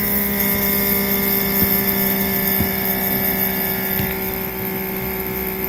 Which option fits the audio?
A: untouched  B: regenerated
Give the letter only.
A